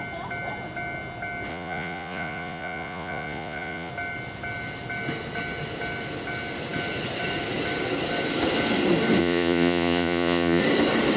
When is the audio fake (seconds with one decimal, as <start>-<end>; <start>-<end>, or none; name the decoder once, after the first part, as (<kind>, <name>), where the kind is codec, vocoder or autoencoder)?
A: 1.5-3.9 (vocoder, Vocos); 9.2-10.6